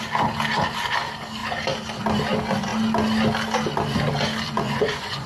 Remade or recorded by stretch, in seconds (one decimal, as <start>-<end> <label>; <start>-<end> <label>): 0.0-4.5 recorded; 4.5-5.3 remade